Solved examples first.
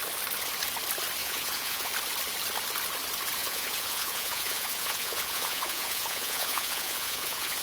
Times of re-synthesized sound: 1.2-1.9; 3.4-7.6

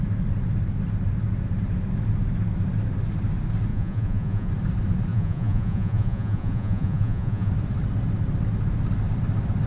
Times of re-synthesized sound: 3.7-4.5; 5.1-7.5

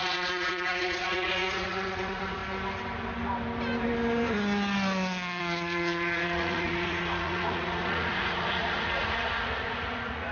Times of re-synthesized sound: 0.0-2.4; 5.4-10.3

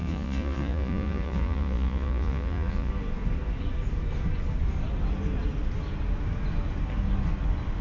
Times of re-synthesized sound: 0.0-2.9